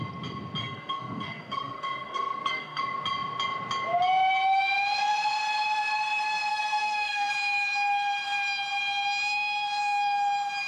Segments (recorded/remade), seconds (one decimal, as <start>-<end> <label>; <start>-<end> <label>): 0.0-0.6 recorded; 0.6-2.8 remade; 2.8-6.5 recorded; 6.5-7.3 remade; 7.3-10.7 recorded